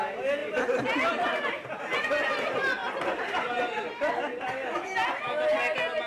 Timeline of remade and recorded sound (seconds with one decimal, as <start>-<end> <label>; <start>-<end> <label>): 0.0-6.1 recorded